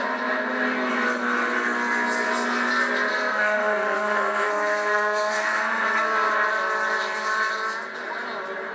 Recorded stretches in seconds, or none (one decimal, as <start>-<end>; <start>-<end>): 0.0-3.1; 6.3-8.7